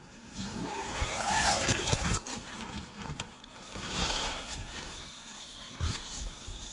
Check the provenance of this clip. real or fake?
fake